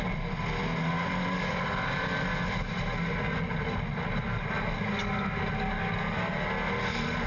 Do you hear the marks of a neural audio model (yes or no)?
no